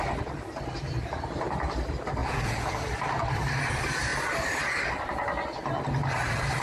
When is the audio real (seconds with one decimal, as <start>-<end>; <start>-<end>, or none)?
0.0-2.2; 2.7-6.6